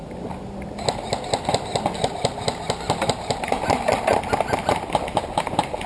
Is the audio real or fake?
real